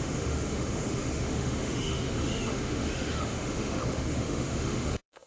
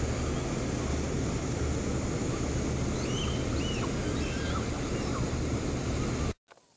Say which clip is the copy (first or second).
first